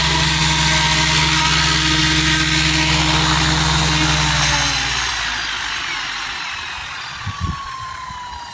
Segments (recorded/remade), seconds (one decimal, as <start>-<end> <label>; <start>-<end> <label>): 0.0-6.8 recorded; 6.8-8.1 remade; 8.1-8.5 recorded